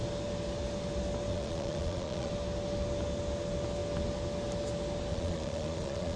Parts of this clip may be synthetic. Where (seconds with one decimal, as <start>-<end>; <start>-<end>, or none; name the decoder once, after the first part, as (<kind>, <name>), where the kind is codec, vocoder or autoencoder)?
1.3-2.3 (vocoder, Vocos); 5.1-6.2